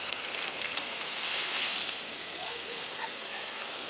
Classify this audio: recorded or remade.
remade